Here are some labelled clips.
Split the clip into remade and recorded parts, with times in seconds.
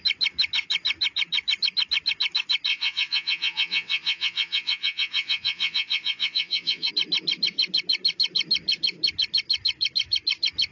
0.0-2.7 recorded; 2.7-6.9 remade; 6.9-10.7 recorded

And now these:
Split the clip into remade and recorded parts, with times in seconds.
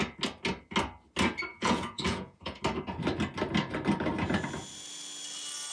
0.0-1.5 recorded; 1.5-2.6 remade; 2.6-5.7 recorded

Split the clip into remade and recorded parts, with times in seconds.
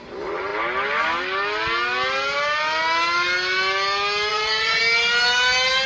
0.0-4.3 recorded; 4.3-4.8 remade; 4.8-5.9 recorded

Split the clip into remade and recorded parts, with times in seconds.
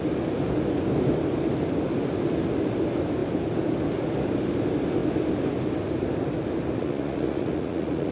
0.0-6.8 recorded; 6.8-8.1 remade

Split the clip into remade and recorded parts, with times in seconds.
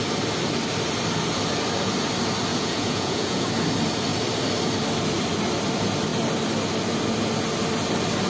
0.0-2.5 recorded; 2.5-3.5 remade; 3.5-8.3 recorded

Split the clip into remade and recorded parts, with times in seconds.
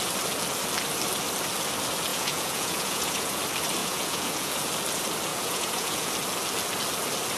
0.0-2.1 recorded; 2.1-3.4 remade; 3.4-3.8 recorded; 3.8-4.5 remade; 4.5-5.3 recorded; 5.3-6.1 remade; 6.1-7.4 recorded